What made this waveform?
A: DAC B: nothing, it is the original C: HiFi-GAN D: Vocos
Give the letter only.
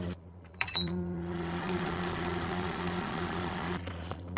D